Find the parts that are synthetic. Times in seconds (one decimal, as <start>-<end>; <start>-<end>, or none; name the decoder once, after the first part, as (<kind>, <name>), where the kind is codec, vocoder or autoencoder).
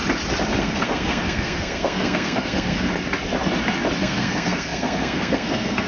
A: 0.6-2.9 (codec, SNAC); 4.0-5.9